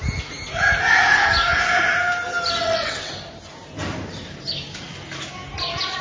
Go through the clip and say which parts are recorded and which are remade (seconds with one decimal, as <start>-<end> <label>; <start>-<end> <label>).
0.0-2.6 recorded; 2.6-3.1 remade; 3.1-6.0 recorded